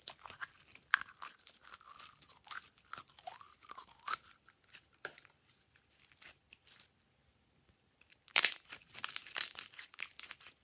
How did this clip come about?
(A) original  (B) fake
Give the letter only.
A